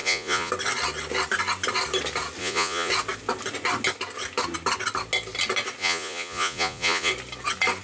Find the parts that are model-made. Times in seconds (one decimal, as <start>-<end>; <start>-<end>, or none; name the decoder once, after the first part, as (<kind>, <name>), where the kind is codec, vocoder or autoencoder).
0.0-0.5 (vocoder, Vocos); 2.4-2.9; 5.8-7.1